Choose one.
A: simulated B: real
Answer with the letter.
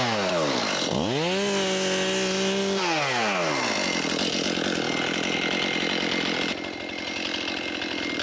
B